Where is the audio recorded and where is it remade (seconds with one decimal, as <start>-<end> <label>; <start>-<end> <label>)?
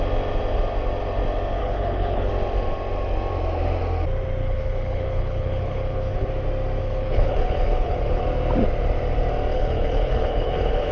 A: 0.0-1.6 recorded; 1.6-2.3 remade; 2.3-4.4 recorded; 4.4-6.3 remade; 6.3-6.8 recorded; 6.8-8.2 remade; 8.2-9.5 recorded; 9.5-10.9 remade